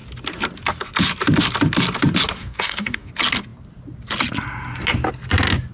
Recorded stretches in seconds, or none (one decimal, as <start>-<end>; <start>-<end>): 0.0-2.4; 3.1-5.7